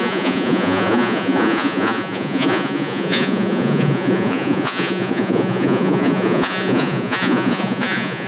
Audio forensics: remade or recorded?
remade